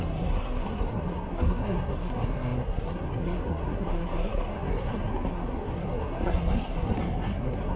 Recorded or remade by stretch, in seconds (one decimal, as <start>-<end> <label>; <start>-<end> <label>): 0.0-7.8 remade